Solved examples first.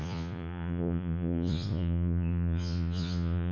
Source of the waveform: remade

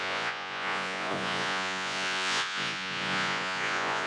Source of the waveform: remade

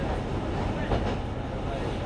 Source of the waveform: recorded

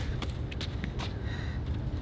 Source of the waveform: recorded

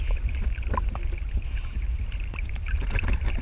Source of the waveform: recorded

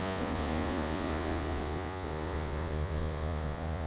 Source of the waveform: remade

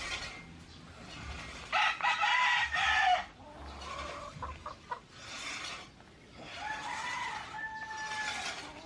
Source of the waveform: recorded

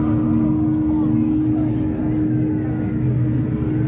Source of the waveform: recorded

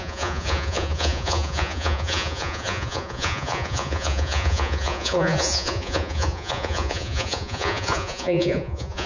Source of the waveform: remade